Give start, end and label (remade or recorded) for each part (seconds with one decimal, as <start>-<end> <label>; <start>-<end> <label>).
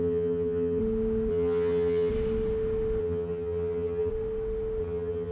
0.0-0.8 remade; 0.8-1.3 recorded; 1.3-2.1 remade; 2.1-3.0 recorded; 3.0-4.1 remade; 4.1-4.8 recorded; 4.8-5.3 remade